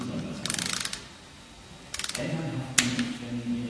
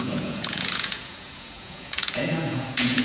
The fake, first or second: second